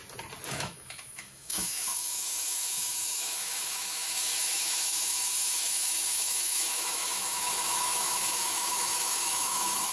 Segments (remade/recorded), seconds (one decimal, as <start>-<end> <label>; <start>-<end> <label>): 0.0-0.5 recorded; 0.5-9.9 remade